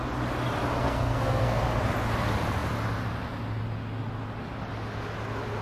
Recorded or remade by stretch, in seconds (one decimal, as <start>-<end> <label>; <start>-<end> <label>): 0.0-0.8 recorded; 0.8-1.6 remade; 1.6-5.6 recorded

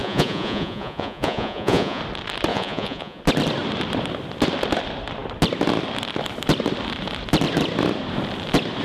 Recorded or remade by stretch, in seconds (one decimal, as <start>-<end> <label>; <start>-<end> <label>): 0.0-2.0 remade; 2.0-2.5 recorded; 2.5-3.2 remade; 3.2-8.8 recorded

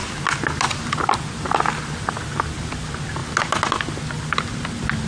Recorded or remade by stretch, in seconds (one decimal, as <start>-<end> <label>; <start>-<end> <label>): 0.0-5.1 recorded

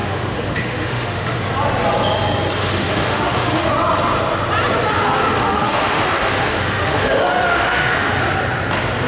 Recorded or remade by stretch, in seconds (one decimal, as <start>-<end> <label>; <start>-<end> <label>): 0.0-1.4 remade; 1.4-2.6 recorded; 2.6-3.7 remade; 3.7-4.9 recorded; 4.9-8.2 remade; 8.2-9.1 recorded

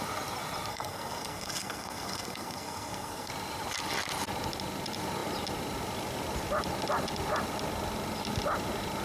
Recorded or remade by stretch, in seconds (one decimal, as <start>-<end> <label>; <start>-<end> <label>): 0.0-0.7 recorded; 0.7-3.3 remade; 3.3-9.0 recorded

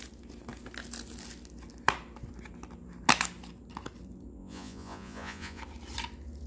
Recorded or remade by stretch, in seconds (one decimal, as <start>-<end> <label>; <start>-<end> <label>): 0.0-4.4 recorded; 4.4-5.6 remade; 5.6-6.5 recorded

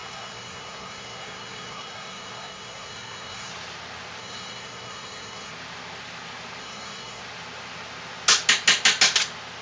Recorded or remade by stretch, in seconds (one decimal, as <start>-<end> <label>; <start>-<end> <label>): 0.0-3.5 remade; 3.5-4.2 recorded; 4.2-5.5 remade; 5.5-6.6 recorded; 6.6-7.2 remade; 7.2-9.6 recorded